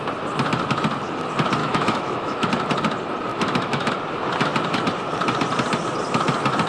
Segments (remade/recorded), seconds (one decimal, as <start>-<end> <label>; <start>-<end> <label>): 0.0-1.6 recorded; 1.6-2.5 remade; 2.5-3.3 recorded; 3.3-3.9 remade; 3.9-6.7 recorded